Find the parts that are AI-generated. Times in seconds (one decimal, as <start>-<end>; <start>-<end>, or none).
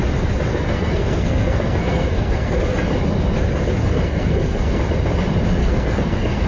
0.5-2.6; 3.8-4.8; 5.6-6.5